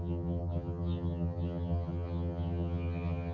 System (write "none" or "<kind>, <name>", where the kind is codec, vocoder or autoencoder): vocoder, HiFi-GAN